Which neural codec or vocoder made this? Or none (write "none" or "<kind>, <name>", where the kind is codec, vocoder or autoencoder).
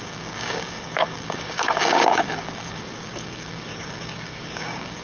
codec, DAC